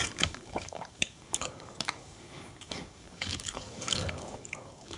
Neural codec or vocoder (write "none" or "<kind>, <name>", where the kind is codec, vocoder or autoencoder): codec, DAC